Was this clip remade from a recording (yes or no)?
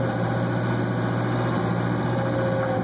no